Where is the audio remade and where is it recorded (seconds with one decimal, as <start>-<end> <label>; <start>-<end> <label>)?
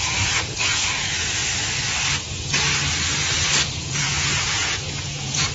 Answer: 0.0-1.4 remade; 1.4-3.7 recorded; 3.7-5.5 remade